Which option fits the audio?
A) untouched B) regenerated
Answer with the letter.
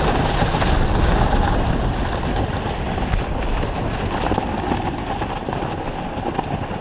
A